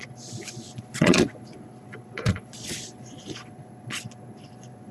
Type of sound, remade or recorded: remade